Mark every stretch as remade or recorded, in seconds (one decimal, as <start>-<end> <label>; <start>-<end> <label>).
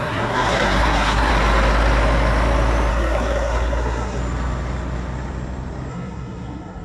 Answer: 0.0-1.3 remade; 1.3-2.9 recorded; 2.9-4.2 remade; 4.2-5.9 recorded; 5.9-6.8 remade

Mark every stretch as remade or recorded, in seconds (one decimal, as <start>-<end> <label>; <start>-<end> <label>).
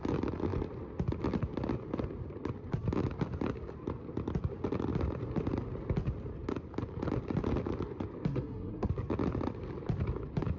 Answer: 0.0-8.3 recorded; 8.3-8.9 remade; 8.9-10.6 recorded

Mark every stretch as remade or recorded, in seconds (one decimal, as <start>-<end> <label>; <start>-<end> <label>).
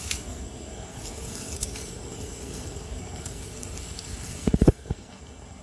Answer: 0.0-5.6 remade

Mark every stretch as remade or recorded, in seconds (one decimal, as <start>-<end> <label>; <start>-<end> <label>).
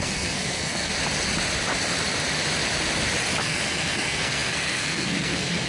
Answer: 0.0-0.9 remade; 0.9-3.4 recorded; 3.4-5.7 remade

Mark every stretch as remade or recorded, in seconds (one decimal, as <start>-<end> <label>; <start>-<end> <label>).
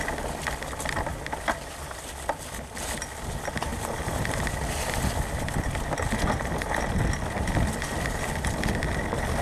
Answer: 0.0-9.4 recorded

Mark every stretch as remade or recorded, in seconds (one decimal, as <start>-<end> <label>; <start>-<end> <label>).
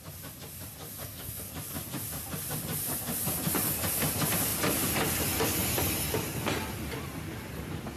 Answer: 0.0-1.0 recorded; 1.0-1.5 remade; 1.5-8.0 recorded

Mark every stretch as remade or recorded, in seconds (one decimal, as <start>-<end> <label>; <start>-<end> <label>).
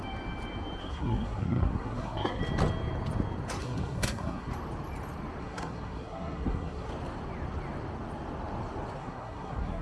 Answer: 0.0-0.8 recorded; 0.8-2.4 remade; 2.4-3.6 recorded; 3.6-4.5 remade; 4.5-5.4 recorded; 5.4-6.9 remade; 6.9-9.0 recorded; 9.0-9.8 remade